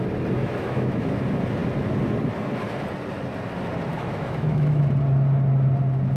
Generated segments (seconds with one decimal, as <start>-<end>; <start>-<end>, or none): 0.4-1.1; 3.9-4.8